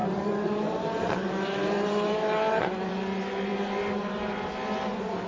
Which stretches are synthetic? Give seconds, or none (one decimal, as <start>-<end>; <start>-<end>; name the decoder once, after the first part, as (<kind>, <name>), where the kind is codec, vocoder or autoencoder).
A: 0.0-2.9 (vocoder, BigVGAN v2)